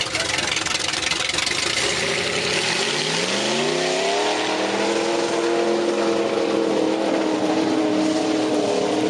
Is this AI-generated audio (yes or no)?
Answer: no